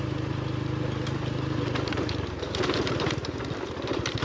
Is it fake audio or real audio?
fake